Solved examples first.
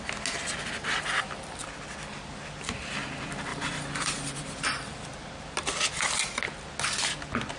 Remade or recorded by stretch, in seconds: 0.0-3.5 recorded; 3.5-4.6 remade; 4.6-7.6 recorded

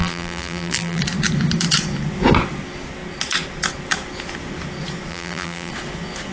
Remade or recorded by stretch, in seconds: 0.0-1.0 remade; 1.0-5.1 recorded; 5.1-5.7 remade; 5.7-6.3 recorded

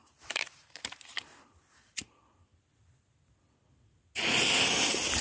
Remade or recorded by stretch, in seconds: 0.0-2.1 remade; 2.1-5.2 recorded

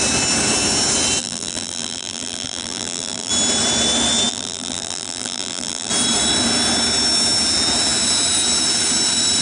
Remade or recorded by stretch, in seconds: 0.0-1.2 recorded; 1.2-3.3 remade; 3.3-4.3 recorded; 4.3-5.9 remade; 5.9-9.4 recorded

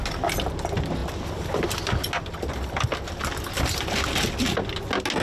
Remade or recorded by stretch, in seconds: 0.0-5.2 recorded